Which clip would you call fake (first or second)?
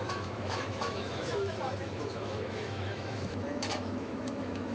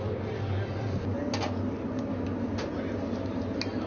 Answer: first